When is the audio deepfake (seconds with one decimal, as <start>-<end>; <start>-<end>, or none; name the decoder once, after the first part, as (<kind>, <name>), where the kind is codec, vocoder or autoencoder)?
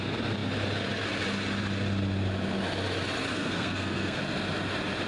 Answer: 3.3-4.2 (codec, SNAC)